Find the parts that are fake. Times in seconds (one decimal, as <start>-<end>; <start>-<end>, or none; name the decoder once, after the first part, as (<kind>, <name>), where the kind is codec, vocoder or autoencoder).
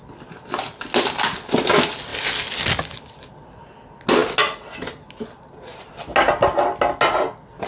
none